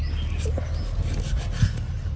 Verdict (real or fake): real